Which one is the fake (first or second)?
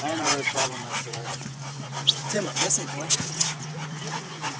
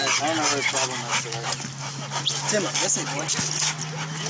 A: first